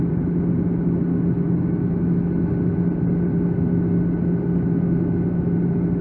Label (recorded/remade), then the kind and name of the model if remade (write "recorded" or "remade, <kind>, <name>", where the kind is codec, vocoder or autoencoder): recorded